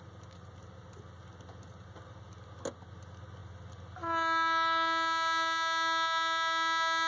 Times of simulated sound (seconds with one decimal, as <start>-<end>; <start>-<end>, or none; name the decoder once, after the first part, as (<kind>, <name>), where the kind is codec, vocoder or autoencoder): none

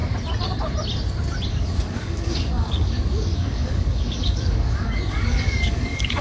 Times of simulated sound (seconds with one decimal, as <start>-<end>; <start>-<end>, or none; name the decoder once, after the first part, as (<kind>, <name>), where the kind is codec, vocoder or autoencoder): 1.5-6.2 (codec, DAC)

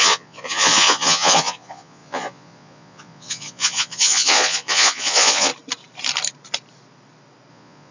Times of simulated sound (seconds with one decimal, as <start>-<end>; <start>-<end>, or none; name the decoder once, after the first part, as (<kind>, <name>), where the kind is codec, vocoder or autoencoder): 0.0-5.5 (vocoder, Vocos); 7.5-7.9